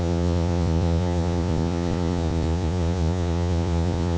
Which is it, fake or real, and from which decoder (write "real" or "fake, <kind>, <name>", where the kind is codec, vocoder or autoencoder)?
fake, vocoder, Vocos